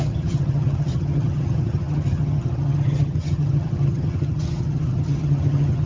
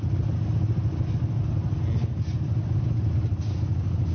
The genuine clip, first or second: second